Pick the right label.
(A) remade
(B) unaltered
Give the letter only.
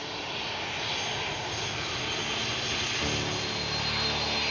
B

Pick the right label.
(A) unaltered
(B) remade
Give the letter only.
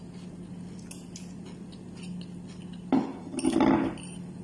A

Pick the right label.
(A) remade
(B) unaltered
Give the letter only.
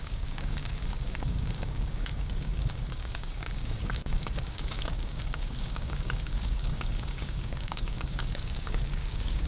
A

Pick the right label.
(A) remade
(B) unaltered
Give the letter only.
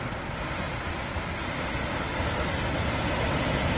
B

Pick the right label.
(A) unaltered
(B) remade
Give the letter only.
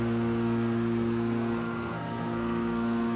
B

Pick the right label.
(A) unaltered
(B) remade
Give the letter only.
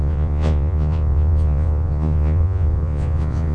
B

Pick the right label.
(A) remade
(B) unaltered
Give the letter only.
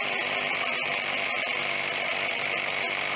B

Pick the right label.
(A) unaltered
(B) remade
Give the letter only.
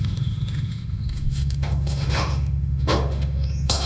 B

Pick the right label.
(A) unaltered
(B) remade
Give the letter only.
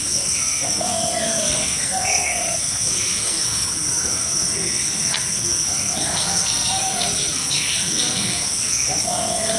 B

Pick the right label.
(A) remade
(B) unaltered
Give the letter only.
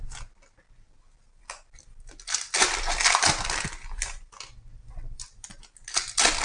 A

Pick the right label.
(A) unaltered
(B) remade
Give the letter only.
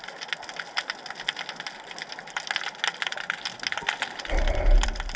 A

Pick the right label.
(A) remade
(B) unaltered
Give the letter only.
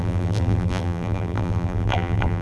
A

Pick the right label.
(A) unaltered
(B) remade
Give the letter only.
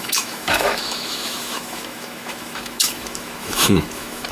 B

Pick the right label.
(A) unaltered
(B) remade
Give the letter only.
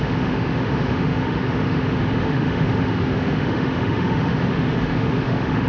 B